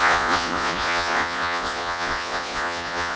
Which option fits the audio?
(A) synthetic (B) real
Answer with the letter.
A